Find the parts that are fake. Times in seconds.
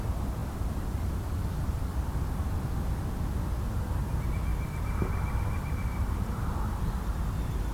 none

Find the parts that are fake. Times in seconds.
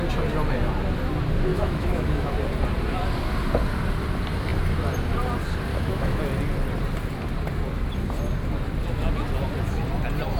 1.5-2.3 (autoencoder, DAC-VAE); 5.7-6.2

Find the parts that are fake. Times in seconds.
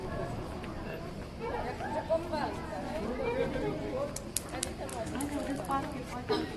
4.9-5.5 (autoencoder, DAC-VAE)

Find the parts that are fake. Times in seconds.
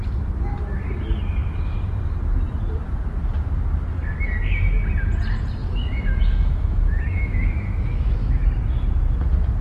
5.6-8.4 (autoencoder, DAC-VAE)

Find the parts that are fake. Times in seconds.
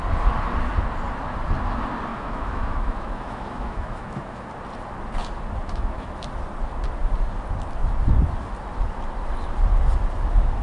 2.1-4.5 (autoencoder, DAC-VAE); 5.6-6.1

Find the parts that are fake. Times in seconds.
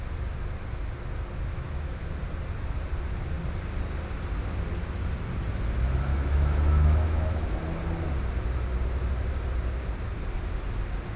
1.5-2.0 (autoencoder, DAC-VAE); 6.1-7.6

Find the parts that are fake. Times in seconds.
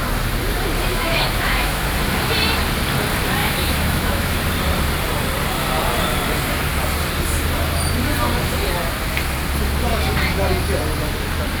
0.9-1.9 (autoencoder, DAC-VAE); 3.4-4.4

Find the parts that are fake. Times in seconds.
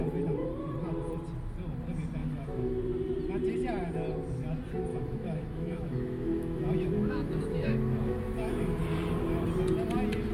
2.2-2.8 (autoencoder, DAC-VAE); 4.9-8.8